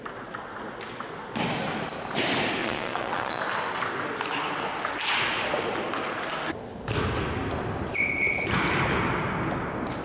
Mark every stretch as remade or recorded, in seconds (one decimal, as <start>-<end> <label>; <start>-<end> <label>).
0.0-2.6 recorded; 2.6-3.4 remade; 3.4-10.0 recorded